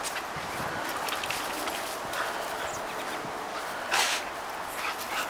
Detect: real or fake real